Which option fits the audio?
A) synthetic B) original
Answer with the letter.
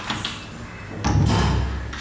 B